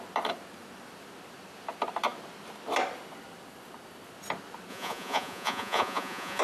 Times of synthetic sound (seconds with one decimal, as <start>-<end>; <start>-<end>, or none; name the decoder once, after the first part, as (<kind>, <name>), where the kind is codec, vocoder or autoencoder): 4.7-6.4 (vocoder, Vocos)

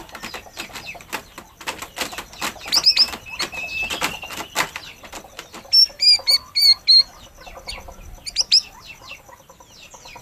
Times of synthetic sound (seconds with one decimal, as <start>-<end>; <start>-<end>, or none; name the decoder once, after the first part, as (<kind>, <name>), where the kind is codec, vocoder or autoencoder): none